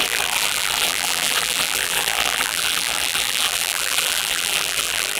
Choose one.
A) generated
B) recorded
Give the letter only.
A